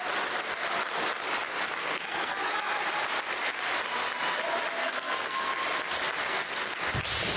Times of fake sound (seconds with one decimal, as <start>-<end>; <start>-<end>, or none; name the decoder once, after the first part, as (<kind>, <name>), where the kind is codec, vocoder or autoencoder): 1.8-2.5 (codec, SNAC); 4.8-5.5; 6.2-6.8